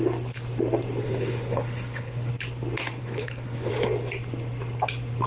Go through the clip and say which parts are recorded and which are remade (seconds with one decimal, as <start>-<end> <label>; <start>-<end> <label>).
0.0-1.0 recorded; 1.0-2.3 remade; 2.3-3.0 recorded; 3.0-3.7 remade; 3.7-5.3 recorded